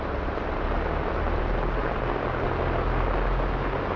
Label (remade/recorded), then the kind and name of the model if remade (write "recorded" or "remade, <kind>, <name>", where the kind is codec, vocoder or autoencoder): recorded